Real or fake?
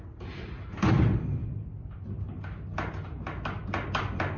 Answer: real